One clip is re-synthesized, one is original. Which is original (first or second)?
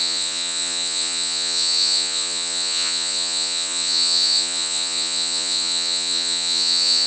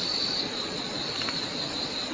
second